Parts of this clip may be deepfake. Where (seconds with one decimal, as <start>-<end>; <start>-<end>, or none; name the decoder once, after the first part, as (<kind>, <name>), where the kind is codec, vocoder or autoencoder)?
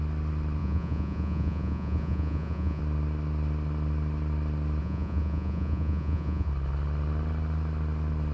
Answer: 0.6-2.8 (vocoder, Vocos); 4.8-6.5